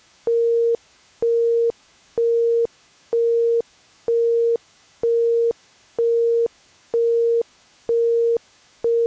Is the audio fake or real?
fake